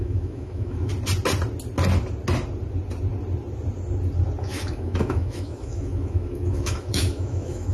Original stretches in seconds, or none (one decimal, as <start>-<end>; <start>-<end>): 0.9-4.4